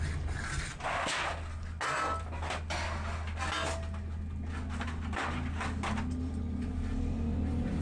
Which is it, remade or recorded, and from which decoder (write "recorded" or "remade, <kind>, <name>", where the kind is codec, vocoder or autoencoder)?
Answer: recorded